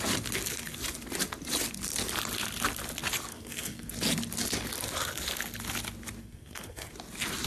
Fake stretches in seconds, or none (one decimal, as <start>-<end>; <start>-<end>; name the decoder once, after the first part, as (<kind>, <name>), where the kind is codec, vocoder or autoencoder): 3.3-3.9 (codec, SNAC); 6.2-6.9